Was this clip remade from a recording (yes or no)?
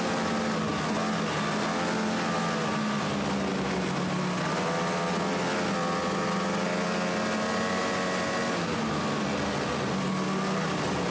no